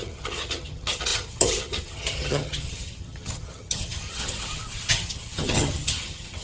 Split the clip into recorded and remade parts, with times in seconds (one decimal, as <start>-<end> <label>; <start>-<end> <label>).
0.0-6.4 remade